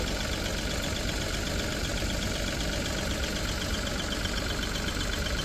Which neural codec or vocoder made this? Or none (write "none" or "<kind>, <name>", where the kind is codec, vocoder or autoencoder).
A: none